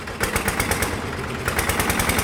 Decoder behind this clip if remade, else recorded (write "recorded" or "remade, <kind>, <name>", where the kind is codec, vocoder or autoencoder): recorded